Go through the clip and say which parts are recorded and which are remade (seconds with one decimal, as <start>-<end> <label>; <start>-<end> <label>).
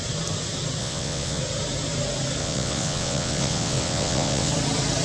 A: 0.0-0.8 recorded; 0.8-1.4 remade; 1.4-2.4 recorded; 2.4-4.5 remade; 4.5-5.0 recorded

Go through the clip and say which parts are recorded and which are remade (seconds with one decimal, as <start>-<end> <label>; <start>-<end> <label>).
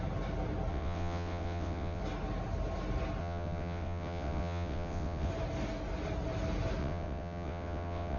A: 0.0-0.7 recorded; 0.7-2.0 remade; 2.0-3.2 recorded; 3.2-5.3 remade; 5.3-6.8 recorded; 6.8-8.2 remade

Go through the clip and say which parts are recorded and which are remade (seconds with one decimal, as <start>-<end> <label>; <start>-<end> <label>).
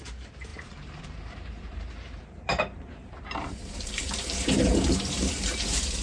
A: 0.0-6.0 remade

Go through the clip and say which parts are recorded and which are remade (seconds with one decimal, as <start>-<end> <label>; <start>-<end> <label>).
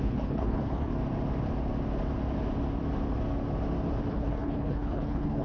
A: 0.0-0.9 remade; 0.9-4.1 recorded; 4.1-5.4 remade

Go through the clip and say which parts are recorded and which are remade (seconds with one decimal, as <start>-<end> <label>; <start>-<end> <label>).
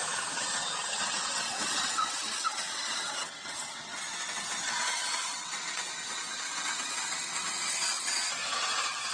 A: 0.0-8.3 remade; 8.3-9.1 recorded